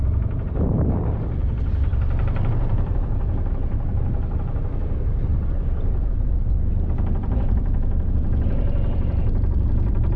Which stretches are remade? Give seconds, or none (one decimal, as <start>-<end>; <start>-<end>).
0.0-1.9; 2.5-10.2